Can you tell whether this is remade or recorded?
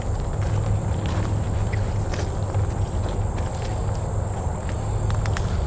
recorded